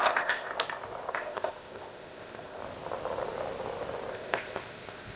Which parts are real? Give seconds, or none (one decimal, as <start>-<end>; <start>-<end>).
0.5-1.1; 2.6-4.1